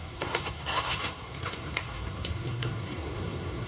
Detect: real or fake fake